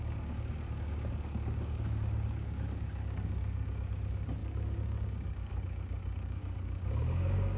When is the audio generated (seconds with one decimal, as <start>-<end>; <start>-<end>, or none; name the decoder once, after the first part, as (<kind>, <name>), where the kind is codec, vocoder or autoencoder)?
0.0-7.6 (codec, DAC)